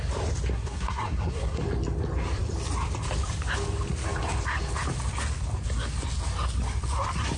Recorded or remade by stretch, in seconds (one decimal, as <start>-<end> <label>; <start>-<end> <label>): 0.0-0.5 recorded; 0.5-1.6 remade; 1.6-7.4 recorded